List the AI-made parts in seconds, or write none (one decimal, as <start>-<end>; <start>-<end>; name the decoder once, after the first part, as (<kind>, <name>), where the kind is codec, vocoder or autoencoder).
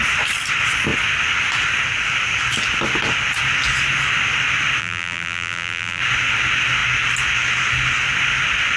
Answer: 4.8-6.0 (vocoder, BigVGAN v2)